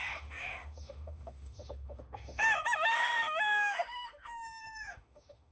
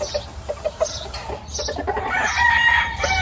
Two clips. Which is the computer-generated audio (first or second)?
first